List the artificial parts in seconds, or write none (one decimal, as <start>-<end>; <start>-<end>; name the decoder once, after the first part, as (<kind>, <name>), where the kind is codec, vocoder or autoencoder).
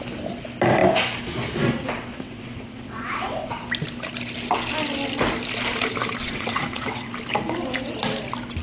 2.1-3.5 (vocoder, WaveNeXt); 6.2-7.1